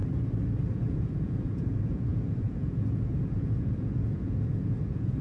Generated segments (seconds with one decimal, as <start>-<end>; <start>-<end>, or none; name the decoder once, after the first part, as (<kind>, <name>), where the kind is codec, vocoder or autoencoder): 0.7-5.2 (vocoder, Vocos)